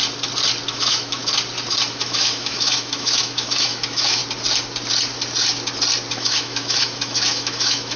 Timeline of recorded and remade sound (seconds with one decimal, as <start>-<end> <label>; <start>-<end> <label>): 0.0-0.7 recorded; 0.7-1.2 remade; 1.2-1.9 recorded; 1.9-4.2 remade; 4.2-6.1 recorded; 6.1-8.0 remade